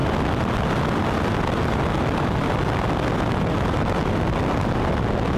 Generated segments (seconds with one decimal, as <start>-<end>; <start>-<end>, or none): none